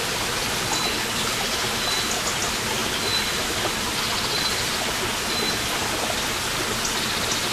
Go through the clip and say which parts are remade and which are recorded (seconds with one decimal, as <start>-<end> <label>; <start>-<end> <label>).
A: 0.0-7.5 recorded